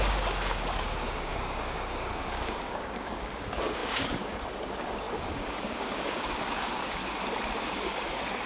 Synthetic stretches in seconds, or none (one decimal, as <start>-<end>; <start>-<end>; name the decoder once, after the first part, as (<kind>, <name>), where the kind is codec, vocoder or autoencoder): 0.0-7.0 (codec, DAC); 7.6-8.5